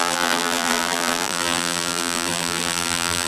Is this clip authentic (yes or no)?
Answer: no